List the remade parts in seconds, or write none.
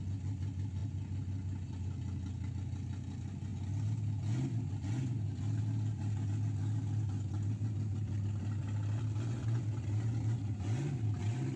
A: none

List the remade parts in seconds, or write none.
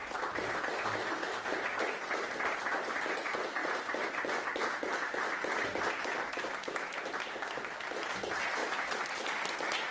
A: none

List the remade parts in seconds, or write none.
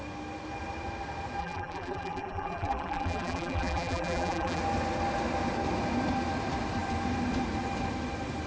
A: 1.4-4.6 (vocoder, BigVGAN v2)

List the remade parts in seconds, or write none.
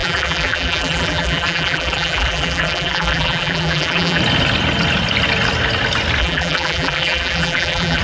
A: 0.0-4.2 (vocoder, BigVGAN v2); 6.2-8.0